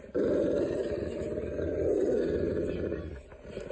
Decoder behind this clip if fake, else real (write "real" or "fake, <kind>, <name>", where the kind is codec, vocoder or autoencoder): real